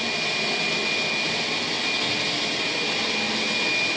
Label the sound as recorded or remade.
recorded